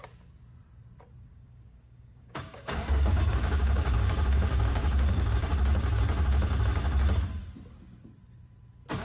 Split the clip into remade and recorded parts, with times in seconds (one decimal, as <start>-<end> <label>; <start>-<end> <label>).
0.0-1.3 recorded; 1.3-5.5 remade; 5.5-9.0 recorded

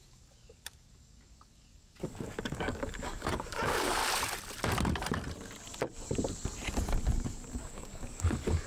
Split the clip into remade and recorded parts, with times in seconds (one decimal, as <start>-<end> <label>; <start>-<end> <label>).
0.0-4.0 remade; 4.0-7.5 recorded; 7.5-8.7 remade

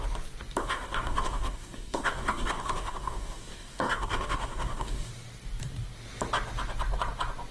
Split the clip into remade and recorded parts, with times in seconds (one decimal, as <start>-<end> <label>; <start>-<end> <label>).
0.0-0.6 recorded; 0.6-5.1 remade; 5.1-7.5 recorded

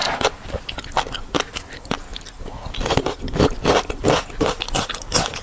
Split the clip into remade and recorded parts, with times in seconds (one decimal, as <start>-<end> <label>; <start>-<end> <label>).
0.0-5.4 recorded

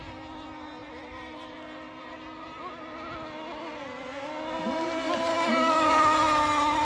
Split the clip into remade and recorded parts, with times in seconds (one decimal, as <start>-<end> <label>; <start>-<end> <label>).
0.0-5.3 recorded; 5.3-6.0 remade; 6.0-6.8 recorded